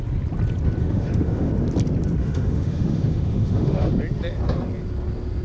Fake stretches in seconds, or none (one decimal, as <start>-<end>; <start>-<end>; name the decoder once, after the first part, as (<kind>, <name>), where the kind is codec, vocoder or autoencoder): 0.8-1.5 (autoencoder, DAC-VAE); 2.2-3.9